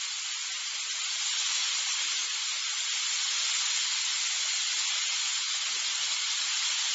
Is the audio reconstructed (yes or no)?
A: no